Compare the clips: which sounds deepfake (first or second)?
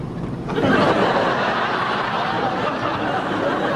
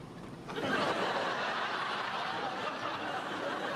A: second